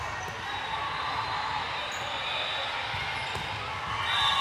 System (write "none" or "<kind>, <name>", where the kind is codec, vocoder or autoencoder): none